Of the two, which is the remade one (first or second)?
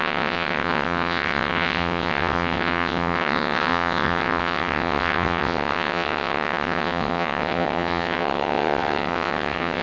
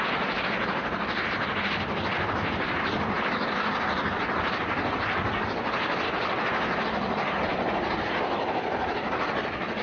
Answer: first